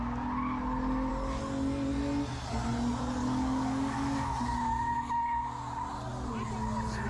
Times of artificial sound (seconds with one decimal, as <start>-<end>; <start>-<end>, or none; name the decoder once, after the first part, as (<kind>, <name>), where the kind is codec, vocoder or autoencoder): 3.2-4.3 (codec, DAC)

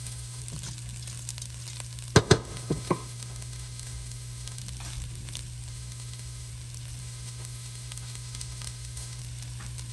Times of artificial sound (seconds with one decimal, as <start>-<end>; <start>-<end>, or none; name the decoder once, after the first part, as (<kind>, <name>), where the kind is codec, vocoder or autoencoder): 0.0-0.4 (autoencoder, DAC-VAE); 2.2-4.6; 5.7-6.5; 7.0-9.2

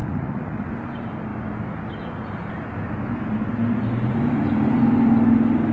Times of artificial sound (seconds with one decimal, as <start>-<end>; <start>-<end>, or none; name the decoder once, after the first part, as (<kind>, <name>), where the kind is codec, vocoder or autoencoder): 0.0-0.7 (vocoder, Vocos)

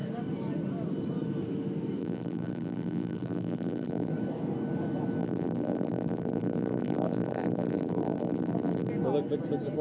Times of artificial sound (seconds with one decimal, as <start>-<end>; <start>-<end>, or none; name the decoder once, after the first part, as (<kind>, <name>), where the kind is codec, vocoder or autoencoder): 2.0-4.1 (vocoder, BigVGAN v2); 5.2-8.9

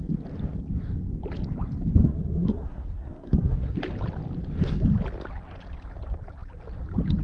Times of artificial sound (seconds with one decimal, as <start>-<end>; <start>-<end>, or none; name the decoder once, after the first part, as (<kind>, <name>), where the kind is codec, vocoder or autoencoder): 2.0-3.8 (codec, SNAC)